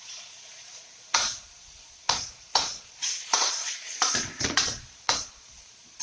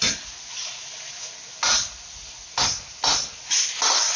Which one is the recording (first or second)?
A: second